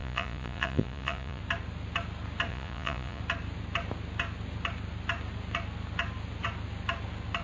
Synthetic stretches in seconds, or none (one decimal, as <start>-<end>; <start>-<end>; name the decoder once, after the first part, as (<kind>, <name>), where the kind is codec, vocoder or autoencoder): 0.0-1.4 (vocoder, Vocos); 2.5-3.2